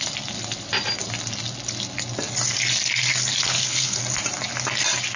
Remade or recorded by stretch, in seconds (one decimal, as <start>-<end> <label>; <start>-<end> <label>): 0.0-3.5 recorded; 3.5-4.0 remade; 4.0-5.2 recorded